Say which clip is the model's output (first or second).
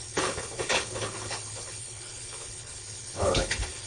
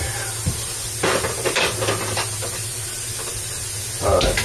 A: first